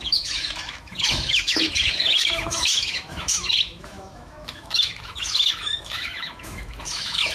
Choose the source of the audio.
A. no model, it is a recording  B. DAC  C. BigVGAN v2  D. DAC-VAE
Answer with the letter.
D